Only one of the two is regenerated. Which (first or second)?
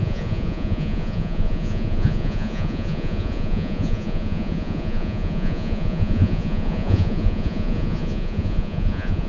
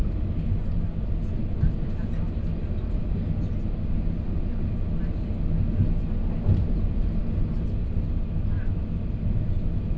first